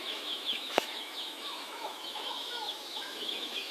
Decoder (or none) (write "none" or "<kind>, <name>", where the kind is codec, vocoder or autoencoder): autoencoder, DAC-VAE